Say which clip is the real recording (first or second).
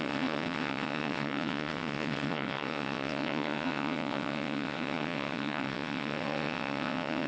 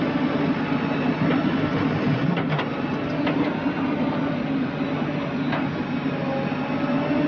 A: second